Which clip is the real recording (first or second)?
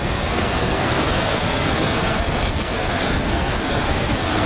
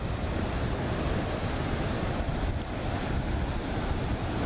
second